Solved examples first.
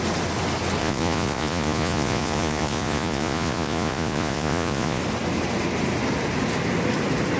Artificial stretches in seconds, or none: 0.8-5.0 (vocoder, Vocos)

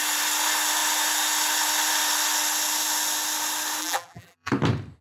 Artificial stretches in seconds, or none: 3.8-4.5 (vocoder, BigVGAN v2)

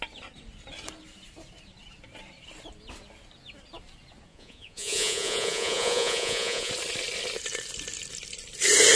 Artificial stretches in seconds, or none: 4.3-6.7 (vocoder, Vocos)